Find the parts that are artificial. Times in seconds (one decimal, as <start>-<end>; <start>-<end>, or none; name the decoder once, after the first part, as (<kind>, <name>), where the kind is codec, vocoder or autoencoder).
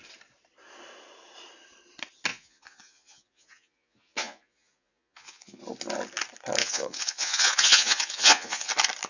2.3-5.6 (vocoder, Vocos); 6.6-8.7